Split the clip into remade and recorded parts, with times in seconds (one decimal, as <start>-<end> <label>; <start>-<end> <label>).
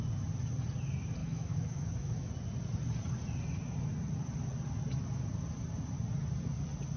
0.0-1.2 recorded; 1.2-2.3 remade; 2.3-7.0 recorded